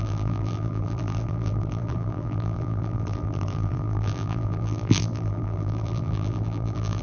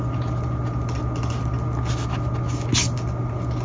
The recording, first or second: second